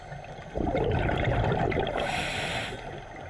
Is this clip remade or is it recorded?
recorded